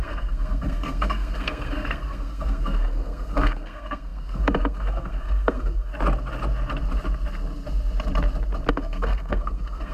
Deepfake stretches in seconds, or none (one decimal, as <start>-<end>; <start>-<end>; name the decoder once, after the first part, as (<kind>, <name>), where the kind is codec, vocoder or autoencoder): 0.0-5.9 (codec, SNAC); 8.7-9.9